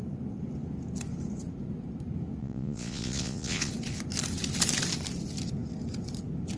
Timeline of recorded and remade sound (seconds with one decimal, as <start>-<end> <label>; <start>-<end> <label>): 0.0-2.4 recorded; 2.4-3.7 remade; 3.7-6.6 recorded